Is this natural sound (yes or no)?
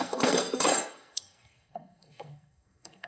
no